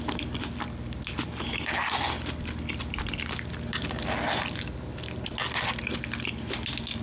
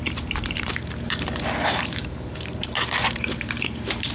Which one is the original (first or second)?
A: first